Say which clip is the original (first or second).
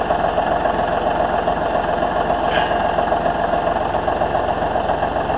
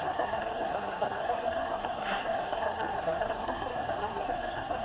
first